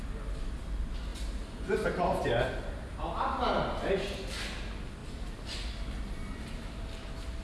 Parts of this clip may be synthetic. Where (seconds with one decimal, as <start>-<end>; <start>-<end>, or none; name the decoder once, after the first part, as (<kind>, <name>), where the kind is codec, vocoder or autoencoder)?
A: none